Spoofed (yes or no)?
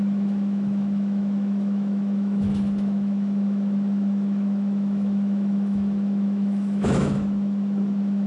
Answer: yes